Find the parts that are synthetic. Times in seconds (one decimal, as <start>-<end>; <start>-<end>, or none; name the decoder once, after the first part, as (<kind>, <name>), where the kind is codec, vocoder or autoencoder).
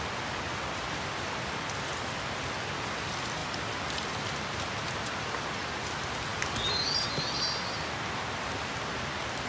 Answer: none